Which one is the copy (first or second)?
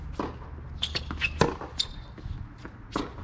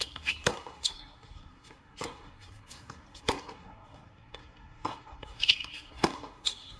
second